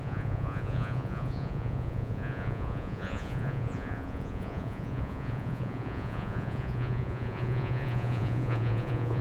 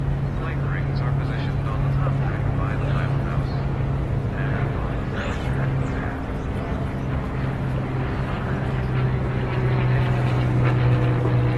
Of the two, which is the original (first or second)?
second